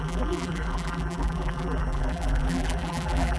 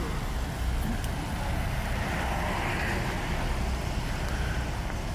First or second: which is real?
second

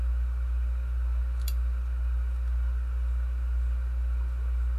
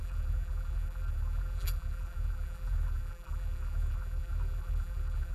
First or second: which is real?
first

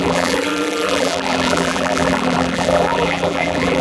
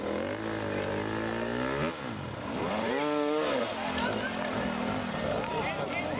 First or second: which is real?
second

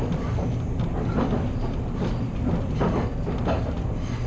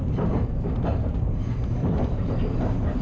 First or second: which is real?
first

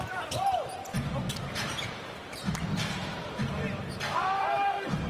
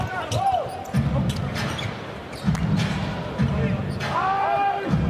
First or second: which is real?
second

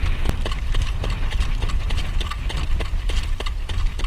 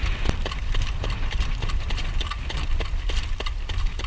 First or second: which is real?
first